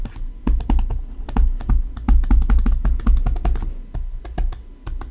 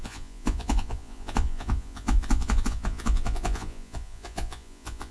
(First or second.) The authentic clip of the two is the first